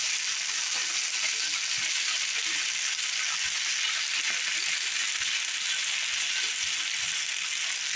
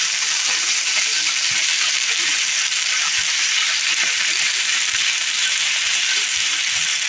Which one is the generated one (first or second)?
second